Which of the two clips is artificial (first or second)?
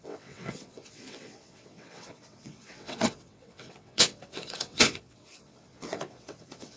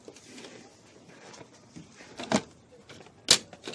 first